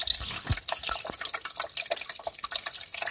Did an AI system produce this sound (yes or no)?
no